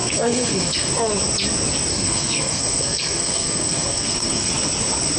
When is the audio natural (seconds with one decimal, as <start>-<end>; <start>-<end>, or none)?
0.9-1.9; 4.5-5.2